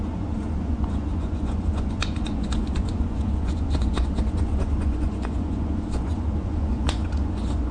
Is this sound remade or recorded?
remade